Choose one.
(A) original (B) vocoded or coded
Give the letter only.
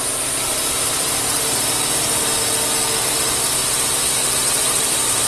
A